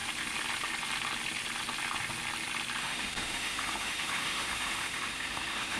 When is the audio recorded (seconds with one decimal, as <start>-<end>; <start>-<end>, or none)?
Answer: 0.0-2.8